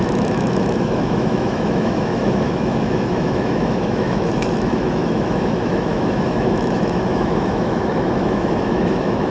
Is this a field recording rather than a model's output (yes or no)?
no